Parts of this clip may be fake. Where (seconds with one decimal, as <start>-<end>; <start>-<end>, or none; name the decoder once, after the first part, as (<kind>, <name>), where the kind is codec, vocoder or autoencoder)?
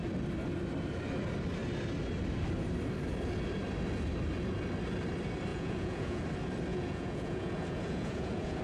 5.5-6.2 (vocoder, Vocos); 6.7-8.6